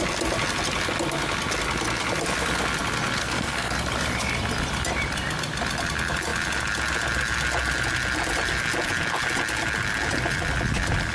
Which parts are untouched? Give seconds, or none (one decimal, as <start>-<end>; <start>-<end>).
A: 0.0-3.2; 3.7-11.1